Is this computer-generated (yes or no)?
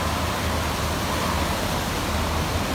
no